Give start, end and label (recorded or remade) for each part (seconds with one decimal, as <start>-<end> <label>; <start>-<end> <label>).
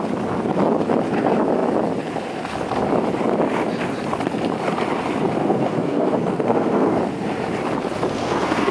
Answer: 0.0-5.4 recorded; 5.4-7.0 remade; 7.0-8.1 recorded; 8.1-8.7 remade